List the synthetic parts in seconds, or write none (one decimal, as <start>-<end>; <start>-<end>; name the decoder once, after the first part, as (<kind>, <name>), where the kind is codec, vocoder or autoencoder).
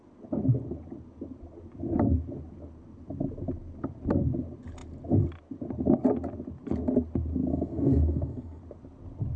7.5-8.6 (codec, SNAC)